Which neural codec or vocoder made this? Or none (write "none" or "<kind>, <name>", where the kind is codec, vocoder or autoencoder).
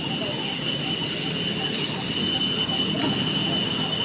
none